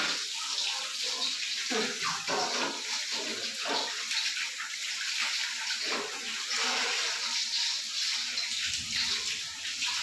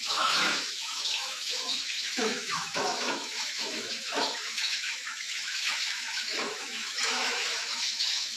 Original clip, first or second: first